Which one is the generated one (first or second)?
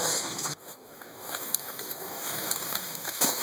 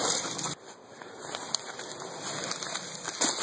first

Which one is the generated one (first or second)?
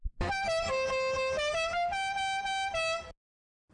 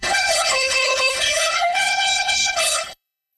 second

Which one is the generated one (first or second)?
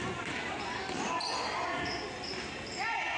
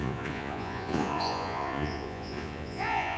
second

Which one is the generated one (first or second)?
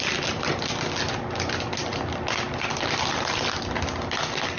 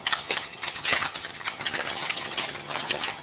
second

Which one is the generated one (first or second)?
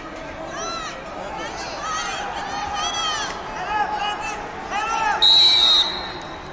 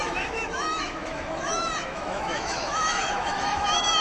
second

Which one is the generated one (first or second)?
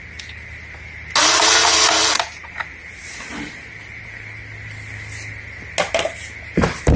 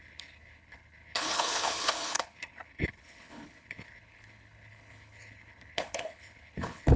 second